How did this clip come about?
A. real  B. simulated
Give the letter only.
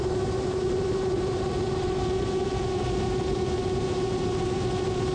B